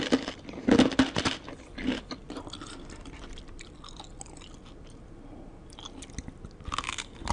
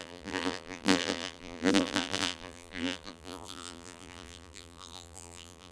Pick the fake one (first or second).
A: second